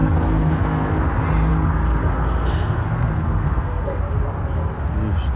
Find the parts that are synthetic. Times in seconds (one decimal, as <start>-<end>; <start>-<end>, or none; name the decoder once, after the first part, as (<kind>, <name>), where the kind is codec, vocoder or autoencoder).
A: 0.0-1.0 (codec, SNAC); 1.5-4.0